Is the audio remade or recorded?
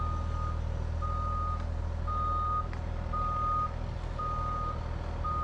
recorded